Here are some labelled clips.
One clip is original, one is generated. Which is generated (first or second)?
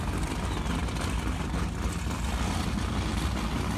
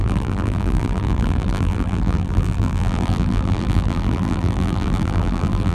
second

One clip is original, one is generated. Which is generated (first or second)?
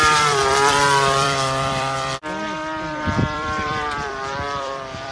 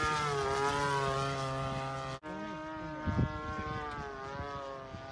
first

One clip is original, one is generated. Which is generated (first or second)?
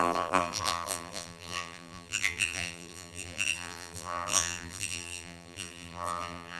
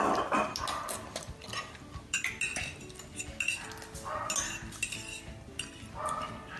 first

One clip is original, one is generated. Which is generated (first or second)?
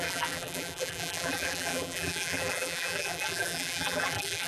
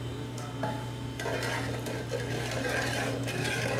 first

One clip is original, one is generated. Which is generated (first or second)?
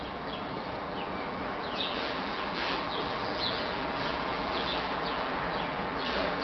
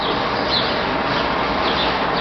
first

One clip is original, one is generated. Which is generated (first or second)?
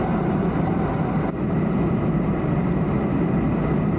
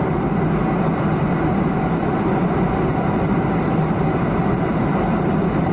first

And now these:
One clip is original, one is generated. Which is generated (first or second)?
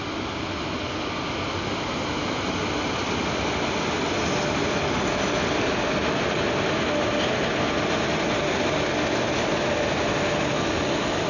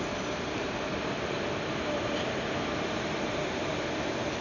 second